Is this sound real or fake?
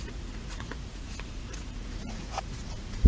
fake